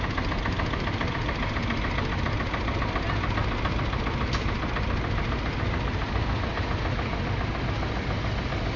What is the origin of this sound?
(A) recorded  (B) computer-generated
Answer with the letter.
A